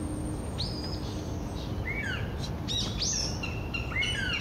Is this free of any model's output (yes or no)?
yes